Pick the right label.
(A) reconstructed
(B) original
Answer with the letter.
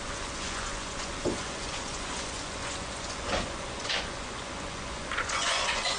A